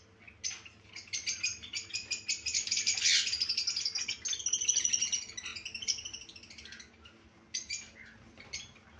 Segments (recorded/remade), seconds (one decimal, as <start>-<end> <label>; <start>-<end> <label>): 0.0-9.0 recorded